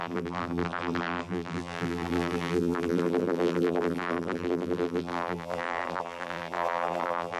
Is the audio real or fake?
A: fake